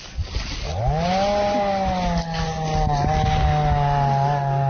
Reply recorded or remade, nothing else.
recorded